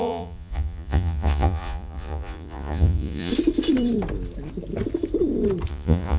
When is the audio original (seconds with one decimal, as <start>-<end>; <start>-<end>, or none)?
3.3-5.7